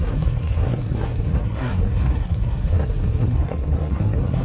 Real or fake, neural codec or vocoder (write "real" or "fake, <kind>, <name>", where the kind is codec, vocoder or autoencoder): fake, codec, SNAC